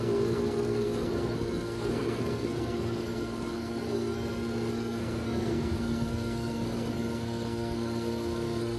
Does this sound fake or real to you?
fake